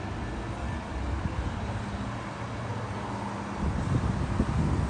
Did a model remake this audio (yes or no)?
no